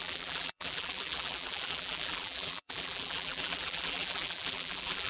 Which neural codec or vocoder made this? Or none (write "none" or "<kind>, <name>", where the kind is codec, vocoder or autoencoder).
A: vocoder, BigVGAN v2